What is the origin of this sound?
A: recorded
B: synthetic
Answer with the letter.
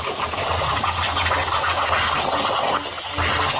A